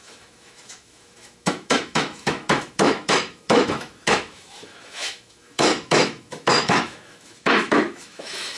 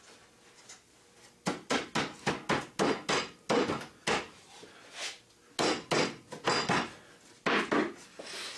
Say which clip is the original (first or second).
second